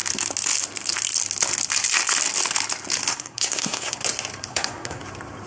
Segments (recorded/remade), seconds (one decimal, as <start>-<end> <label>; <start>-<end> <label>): 0.0-3.1 recorded; 3.1-4.0 remade; 4.0-4.5 recorded; 4.5-5.0 remade; 5.0-5.5 recorded